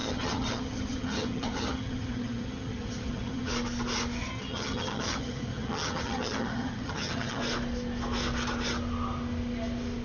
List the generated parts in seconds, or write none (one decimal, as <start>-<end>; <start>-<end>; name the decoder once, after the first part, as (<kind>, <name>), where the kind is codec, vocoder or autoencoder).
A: 0.0-3.5 (vocoder, HiFi-GAN); 4.2-7.4